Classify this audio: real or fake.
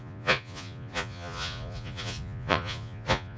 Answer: fake